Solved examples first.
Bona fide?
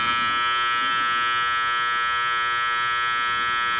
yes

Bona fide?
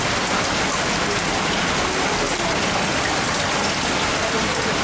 yes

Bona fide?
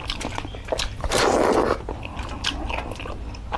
yes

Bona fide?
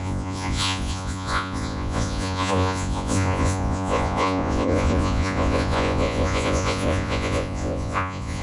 no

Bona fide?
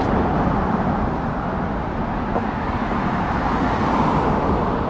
yes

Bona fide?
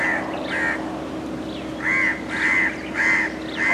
yes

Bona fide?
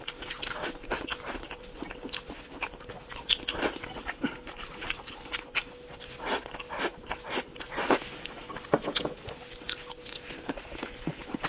yes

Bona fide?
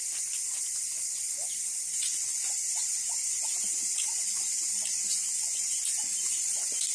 yes